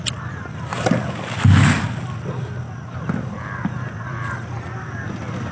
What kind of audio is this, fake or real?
real